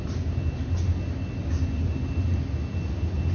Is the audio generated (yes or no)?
no